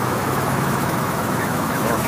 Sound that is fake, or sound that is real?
fake